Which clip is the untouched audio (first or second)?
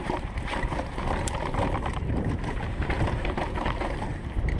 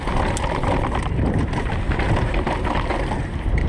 second